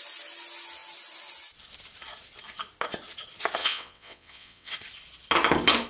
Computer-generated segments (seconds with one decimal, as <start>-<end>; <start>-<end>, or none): 3.6-4.7